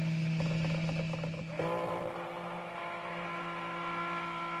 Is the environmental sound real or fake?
real